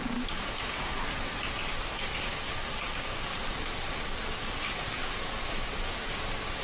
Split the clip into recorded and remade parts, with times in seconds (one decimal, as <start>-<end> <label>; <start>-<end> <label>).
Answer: 0.0-1.0 remade; 1.0-2.1 recorded; 2.1-6.1 remade; 6.1-6.6 recorded